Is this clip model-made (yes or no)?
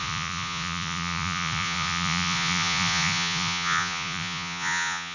yes